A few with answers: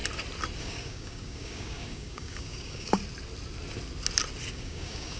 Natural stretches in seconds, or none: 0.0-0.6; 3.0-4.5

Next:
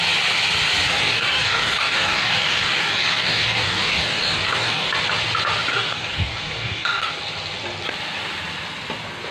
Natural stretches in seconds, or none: 0.0-1.0; 4.9-5.7; 7.1-9.3

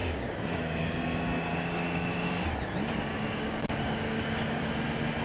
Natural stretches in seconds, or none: 1.0-1.5; 2.3-3.1; 4.7-5.2

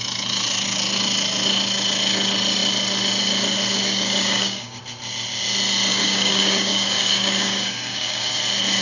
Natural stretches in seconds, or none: 0.0-3.8; 4.8-5.9; 8.4-8.8